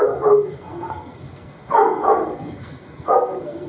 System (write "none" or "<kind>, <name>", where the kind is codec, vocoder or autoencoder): codec, SNAC